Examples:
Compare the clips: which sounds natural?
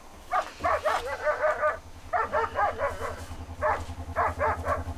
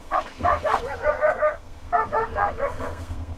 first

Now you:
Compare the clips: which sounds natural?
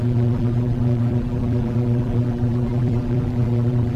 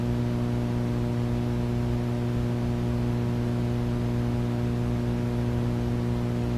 second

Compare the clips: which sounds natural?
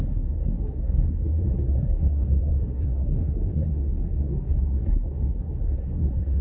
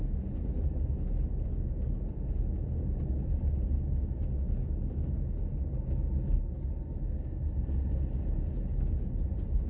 second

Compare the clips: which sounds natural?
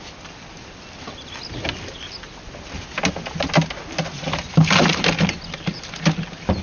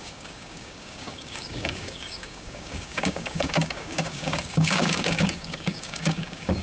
first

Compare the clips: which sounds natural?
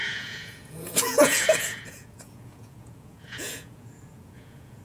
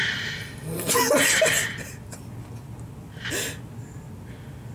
second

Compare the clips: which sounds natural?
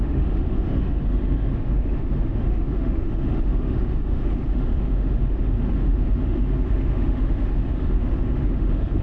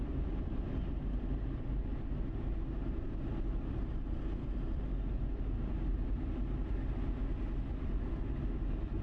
second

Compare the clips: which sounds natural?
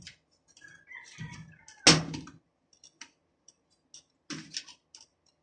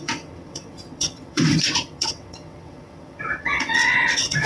first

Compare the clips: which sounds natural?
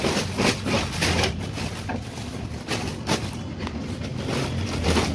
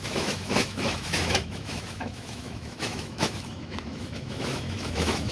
first